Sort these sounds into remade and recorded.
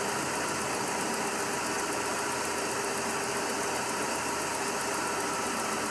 recorded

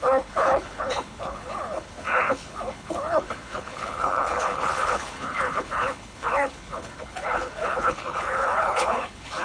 remade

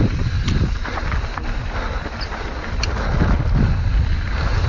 recorded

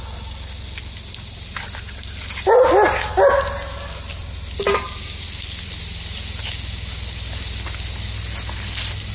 recorded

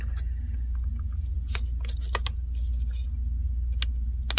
recorded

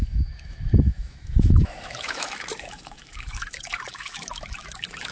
remade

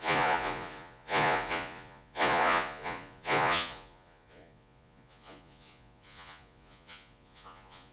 remade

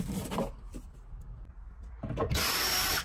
remade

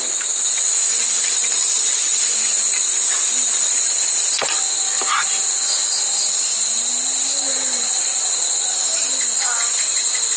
recorded